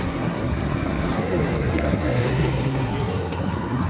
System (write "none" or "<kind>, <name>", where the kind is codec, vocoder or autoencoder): codec, SNAC